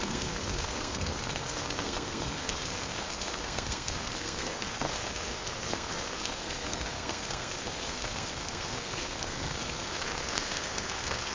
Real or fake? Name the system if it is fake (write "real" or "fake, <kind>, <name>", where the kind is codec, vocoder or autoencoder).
fake, codec, SNAC